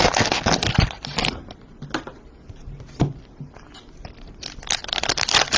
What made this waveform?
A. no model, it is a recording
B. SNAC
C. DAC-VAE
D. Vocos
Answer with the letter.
A